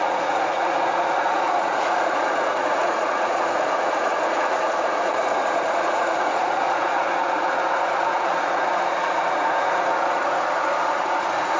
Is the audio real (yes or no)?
no